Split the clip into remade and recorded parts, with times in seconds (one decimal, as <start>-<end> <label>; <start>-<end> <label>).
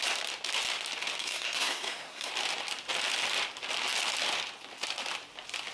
0.0-1.2 recorded; 1.2-2.3 remade; 2.3-5.7 recorded